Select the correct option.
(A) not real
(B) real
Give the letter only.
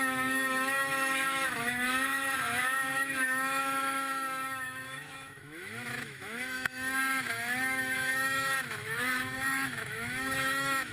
A